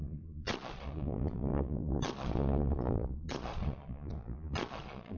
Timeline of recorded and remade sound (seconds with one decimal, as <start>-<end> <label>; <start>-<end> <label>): 0.0-5.2 remade